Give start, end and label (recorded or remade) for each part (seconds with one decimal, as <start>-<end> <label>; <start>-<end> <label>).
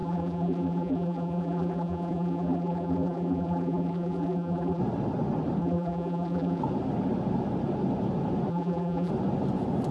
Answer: 0.0-4.8 remade; 4.8-5.6 recorded; 5.6-6.6 remade; 6.6-8.5 recorded; 8.5-9.1 remade; 9.1-9.9 recorded